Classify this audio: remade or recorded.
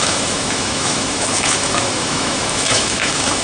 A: remade